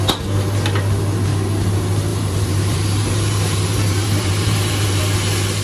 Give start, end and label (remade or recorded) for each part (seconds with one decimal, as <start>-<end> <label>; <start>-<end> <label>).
0.0-2.1 recorded; 2.1-5.0 remade; 5.0-5.6 recorded

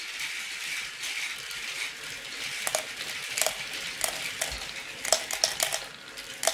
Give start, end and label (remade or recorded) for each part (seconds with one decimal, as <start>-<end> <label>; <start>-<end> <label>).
0.0-6.5 recorded